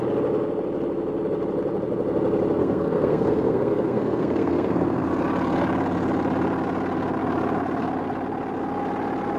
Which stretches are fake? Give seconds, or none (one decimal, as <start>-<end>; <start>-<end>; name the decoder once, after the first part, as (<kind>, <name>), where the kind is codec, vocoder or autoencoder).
2.6-5.1 (codec, SNAC)